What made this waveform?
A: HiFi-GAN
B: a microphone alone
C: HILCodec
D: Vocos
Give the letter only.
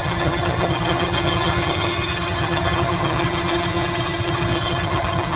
A